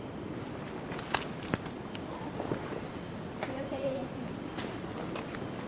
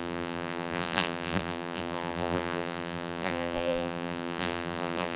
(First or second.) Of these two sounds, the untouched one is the first